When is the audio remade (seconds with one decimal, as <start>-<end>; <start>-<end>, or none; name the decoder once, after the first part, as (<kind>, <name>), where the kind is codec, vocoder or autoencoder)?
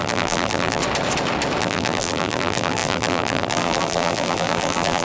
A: 0.0-0.8 (vocoder, BigVGAN v2); 1.6-5.0